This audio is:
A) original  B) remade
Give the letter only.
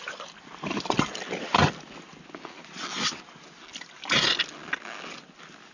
A